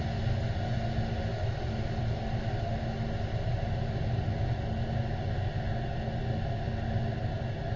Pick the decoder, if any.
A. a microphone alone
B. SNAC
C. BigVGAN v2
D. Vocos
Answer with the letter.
A